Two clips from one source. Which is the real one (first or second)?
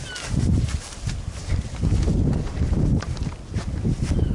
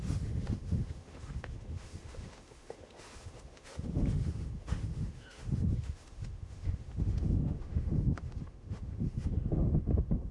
first